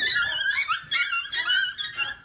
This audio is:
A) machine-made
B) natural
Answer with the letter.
B